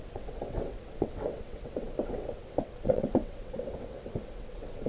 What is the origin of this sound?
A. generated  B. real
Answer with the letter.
A